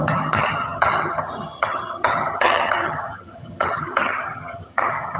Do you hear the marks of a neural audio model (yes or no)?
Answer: yes